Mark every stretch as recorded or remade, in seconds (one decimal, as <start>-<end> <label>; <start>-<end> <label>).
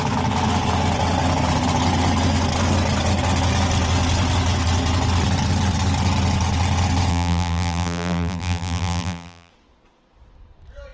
0.0-7.1 recorded; 7.1-9.5 remade; 9.5-10.9 recorded